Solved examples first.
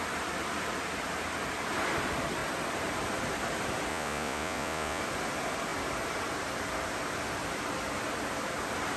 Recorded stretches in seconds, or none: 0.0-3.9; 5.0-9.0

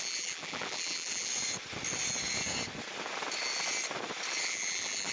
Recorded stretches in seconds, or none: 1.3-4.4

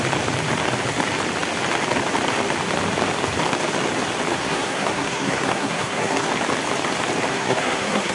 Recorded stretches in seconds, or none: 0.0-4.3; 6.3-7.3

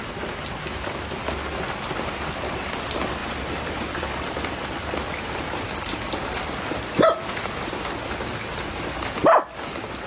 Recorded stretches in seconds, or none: 0.0-3.2; 4.3-10.1

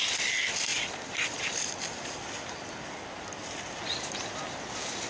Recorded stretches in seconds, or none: none